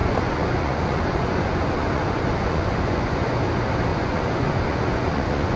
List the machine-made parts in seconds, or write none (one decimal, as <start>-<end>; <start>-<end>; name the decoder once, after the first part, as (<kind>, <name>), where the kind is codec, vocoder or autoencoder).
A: 0.0-3.4 (vocoder, Vocos); 3.9-5.6